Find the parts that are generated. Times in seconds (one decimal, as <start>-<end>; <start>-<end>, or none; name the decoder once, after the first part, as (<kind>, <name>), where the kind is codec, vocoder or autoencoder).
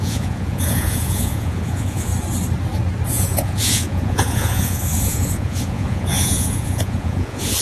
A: 0.0-2.1 (vocoder, Vocos); 3.1-7.6